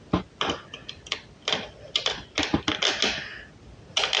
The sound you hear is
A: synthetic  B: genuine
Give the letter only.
B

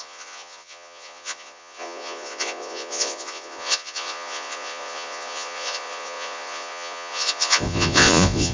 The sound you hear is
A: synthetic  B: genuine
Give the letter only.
A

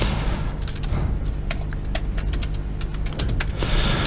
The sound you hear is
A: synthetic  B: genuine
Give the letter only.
B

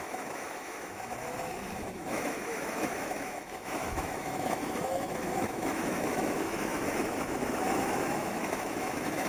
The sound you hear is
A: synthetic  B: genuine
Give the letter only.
A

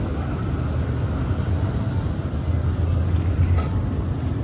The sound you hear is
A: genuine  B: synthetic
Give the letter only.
A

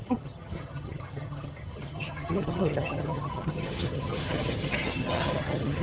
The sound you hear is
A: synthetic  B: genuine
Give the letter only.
A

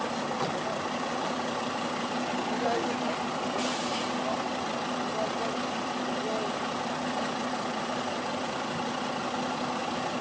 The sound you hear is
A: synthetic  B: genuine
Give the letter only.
B